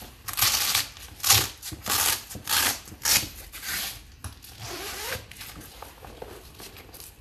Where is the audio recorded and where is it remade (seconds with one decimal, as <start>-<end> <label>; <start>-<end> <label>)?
0.0-7.2 recorded